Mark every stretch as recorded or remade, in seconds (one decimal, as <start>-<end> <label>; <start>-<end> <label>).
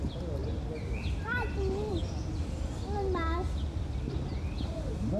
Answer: 0.0-5.2 recorded